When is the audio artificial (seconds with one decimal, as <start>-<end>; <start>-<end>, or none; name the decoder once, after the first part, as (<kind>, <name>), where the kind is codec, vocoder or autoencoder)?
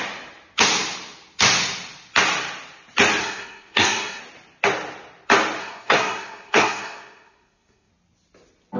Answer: 3.2-4.2 (codec, SNAC); 5.6-7.9